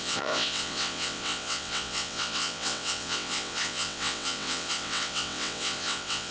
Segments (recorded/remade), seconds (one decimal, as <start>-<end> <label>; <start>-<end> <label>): 0.0-6.3 remade